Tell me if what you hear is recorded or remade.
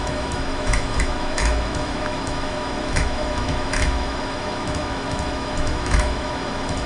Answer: remade